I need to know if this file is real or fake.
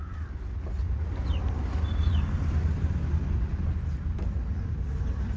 real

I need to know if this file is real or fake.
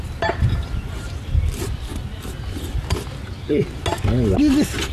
real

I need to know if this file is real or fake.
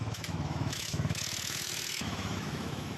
fake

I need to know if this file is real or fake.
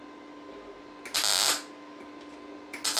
real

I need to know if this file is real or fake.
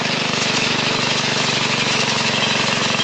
fake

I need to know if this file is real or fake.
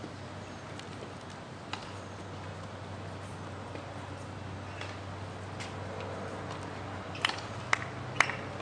real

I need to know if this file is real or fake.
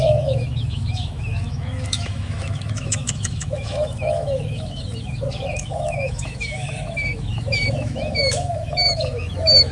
fake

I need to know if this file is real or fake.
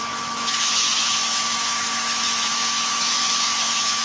fake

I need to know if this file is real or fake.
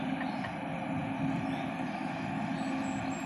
real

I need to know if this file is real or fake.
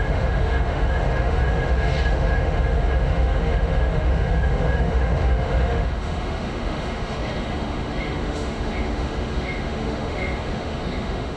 fake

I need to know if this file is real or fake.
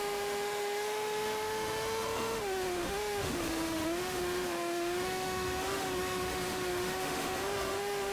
fake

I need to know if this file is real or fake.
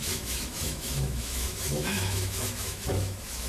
fake